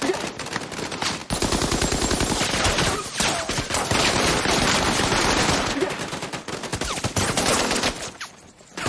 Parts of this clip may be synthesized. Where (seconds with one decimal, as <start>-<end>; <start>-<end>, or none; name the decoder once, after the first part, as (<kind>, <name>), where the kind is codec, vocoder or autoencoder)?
1.2-5.9 (vocoder, BigVGAN v2); 6.7-7.4